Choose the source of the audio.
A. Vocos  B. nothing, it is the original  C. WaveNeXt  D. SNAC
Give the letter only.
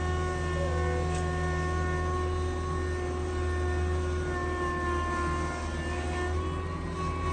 B